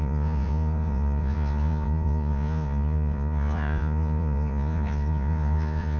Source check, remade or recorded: remade